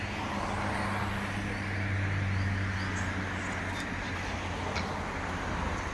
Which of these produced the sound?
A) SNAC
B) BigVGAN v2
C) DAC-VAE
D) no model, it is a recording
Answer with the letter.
D